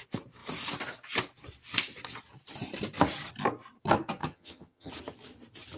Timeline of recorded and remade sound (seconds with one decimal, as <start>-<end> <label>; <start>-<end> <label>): 0.0-4.2 recorded; 4.2-4.9 remade; 4.9-5.8 recorded